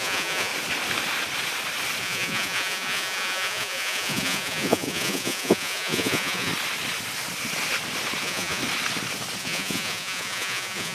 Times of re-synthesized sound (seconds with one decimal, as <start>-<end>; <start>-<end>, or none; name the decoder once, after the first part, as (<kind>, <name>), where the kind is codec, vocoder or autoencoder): 0.0-0.5 (vocoder, Vocos); 2.0-6.5; 8.2-8.6; 9.4-10.9